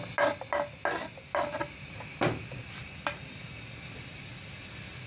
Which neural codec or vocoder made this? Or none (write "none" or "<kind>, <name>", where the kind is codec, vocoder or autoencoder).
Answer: none